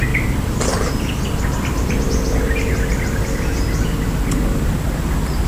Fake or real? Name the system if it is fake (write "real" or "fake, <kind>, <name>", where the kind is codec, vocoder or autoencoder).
real